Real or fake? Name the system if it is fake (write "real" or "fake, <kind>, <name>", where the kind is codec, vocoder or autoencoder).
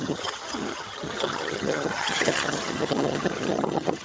fake, vocoder, HiFi-GAN